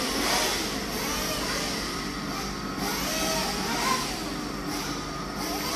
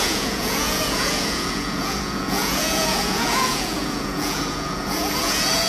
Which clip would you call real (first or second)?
first